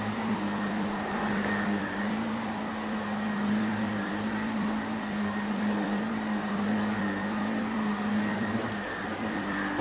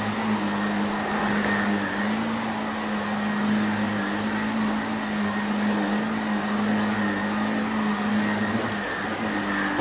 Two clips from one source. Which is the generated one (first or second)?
first